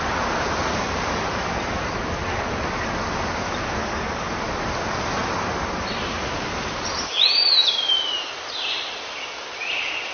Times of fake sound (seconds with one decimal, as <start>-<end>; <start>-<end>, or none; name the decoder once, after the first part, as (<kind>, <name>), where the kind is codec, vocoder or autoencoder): 3.8-4.3 (codec, DAC)